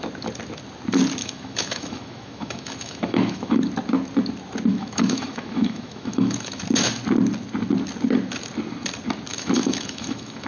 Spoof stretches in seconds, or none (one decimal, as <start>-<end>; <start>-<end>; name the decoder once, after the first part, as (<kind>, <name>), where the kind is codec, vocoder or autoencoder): 1.2-3.6 (autoencoder, DAC-VAE); 4.7-6.6; 9.3-10.5

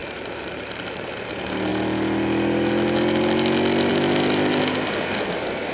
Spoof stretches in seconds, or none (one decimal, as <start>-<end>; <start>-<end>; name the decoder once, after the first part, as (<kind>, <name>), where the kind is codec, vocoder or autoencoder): 0.0-1.1 (vocoder, BigVGAN v2)

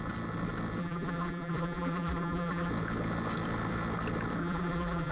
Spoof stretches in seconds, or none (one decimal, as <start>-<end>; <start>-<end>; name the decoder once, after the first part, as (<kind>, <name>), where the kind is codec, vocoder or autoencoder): 0.8-2.7 (vocoder, BigVGAN v2); 4.4-5.1

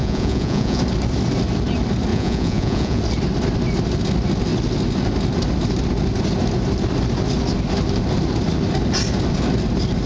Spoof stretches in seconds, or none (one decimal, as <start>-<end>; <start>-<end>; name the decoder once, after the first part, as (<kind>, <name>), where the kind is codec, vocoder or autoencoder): 0.0-0.8 (vocoder, Vocos); 2.1-3.0

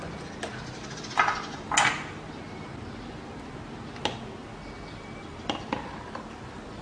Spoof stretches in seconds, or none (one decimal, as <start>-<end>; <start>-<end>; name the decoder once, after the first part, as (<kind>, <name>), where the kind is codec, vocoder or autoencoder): 4.4-6.8 (vocoder, BigVGAN v2)

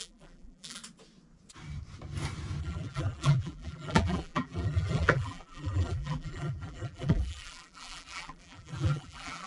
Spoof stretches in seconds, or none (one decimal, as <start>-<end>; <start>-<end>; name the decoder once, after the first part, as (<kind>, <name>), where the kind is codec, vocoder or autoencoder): 0.0-0.8 (vocoder, BigVGAN v2); 2.6-9.5

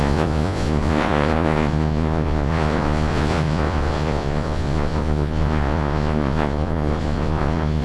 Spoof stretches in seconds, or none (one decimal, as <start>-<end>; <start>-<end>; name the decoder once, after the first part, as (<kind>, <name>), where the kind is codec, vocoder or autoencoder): 0.0-7.8 (vocoder, Vocos)

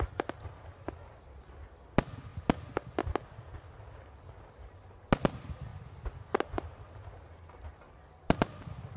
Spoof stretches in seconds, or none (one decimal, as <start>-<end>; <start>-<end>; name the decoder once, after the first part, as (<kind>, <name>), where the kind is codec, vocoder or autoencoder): none